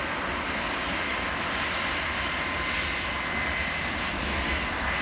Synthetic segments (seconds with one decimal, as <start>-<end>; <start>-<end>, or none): none